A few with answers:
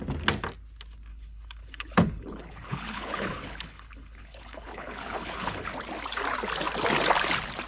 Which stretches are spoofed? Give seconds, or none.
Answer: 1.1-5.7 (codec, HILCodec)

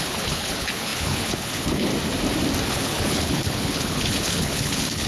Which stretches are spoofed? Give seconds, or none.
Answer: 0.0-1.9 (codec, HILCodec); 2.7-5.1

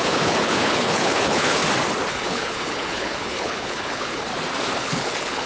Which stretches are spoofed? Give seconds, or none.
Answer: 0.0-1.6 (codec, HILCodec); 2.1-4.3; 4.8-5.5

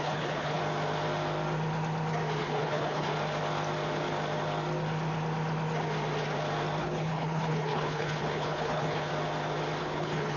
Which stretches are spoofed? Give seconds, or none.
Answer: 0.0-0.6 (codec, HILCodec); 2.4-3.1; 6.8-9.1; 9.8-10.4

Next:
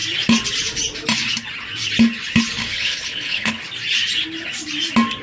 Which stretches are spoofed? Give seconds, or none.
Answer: 2.7-3.6 (codec, HILCodec)

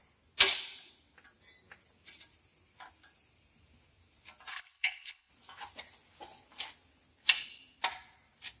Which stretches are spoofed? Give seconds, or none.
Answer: 4.5-5.3 (codec, HILCodec)

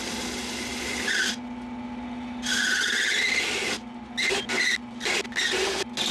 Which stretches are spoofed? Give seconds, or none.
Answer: none

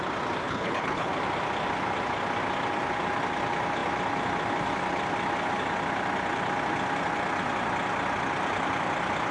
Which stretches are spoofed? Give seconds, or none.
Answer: 0.4-1.1 (codec, HILCodec)